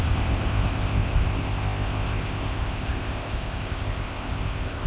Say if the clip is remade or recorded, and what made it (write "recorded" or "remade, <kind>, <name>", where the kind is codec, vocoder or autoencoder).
remade, codec, ZipCodec